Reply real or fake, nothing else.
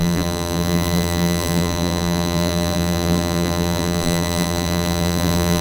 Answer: fake